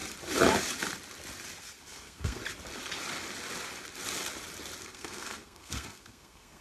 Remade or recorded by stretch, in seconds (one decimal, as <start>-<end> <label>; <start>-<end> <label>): 0.0-1.6 recorded; 1.6-2.4 remade; 2.4-4.8 recorded; 4.8-6.6 remade